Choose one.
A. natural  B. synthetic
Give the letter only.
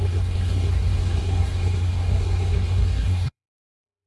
B